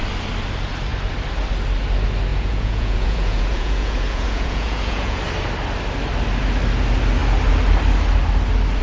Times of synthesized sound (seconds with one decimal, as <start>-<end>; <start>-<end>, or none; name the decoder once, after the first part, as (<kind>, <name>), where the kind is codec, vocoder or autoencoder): 2.3-5.2 (vocoder, Vocos)